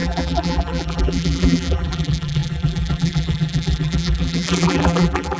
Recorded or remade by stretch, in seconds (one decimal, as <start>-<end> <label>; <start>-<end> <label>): 0.0-5.4 remade